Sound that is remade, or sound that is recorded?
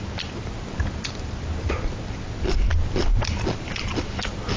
recorded